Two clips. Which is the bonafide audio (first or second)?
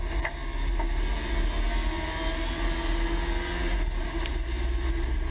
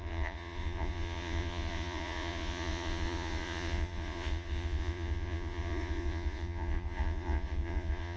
first